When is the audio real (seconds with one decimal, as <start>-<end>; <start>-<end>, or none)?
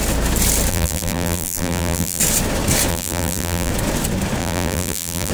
0.0-0.7; 2.2-2.9; 3.7-4.4